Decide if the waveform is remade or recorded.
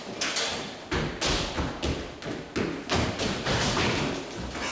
recorded